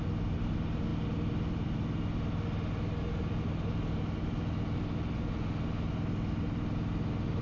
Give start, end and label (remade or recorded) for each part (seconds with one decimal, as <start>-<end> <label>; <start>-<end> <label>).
0.0-7.4 recorded